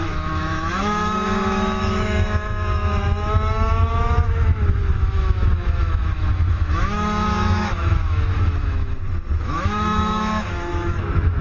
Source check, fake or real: fake